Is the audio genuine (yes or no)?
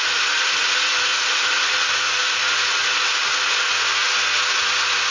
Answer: yes